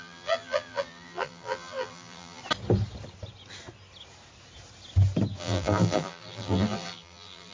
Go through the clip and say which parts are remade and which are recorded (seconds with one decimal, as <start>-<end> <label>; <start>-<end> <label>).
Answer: 0.0-2.4 remade; 2.4-5.4 recorded; 5.4-7.5 remade